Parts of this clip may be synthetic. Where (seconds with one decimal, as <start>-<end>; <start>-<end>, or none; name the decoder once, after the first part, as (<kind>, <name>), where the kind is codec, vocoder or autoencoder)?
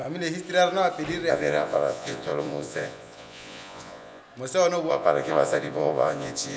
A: 1.3-4.2 (vocoder, Vocos); 4.9-6.6